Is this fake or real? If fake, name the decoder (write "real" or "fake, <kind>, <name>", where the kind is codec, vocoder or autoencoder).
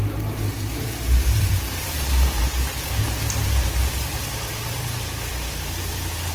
fake, vocoder, BigVGAN v2